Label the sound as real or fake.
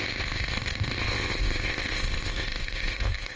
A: fake